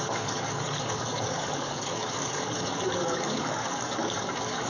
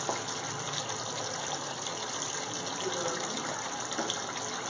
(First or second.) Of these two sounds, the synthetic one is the first